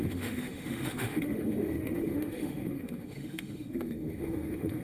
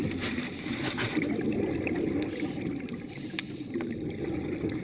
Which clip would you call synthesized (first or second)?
first